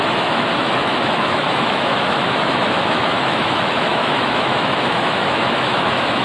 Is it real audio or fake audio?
fake